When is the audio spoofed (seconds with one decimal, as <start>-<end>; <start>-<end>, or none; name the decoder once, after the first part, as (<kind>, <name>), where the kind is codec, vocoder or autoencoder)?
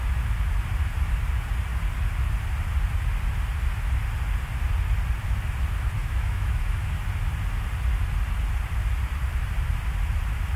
6.0-6.8 (autoencoder, DAC-VAE)